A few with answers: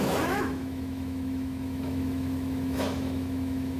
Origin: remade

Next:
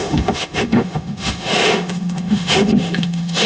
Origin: remade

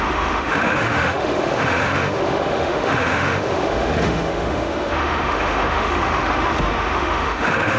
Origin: remade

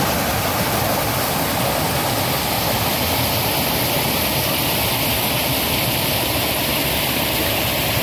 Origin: recorded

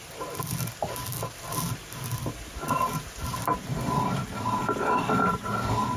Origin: recorded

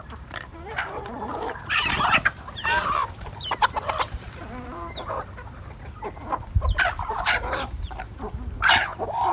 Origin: remade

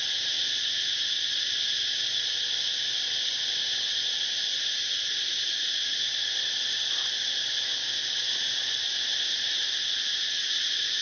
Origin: remade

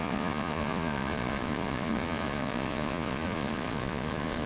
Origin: remade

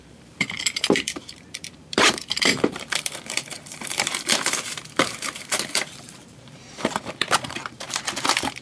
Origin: remade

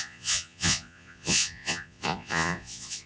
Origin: remade